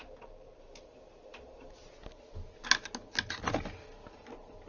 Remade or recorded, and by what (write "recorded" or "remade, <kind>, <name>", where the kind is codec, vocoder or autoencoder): recorded